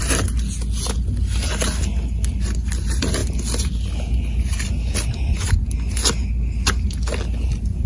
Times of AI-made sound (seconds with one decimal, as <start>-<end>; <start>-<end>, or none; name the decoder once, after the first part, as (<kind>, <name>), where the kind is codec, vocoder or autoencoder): none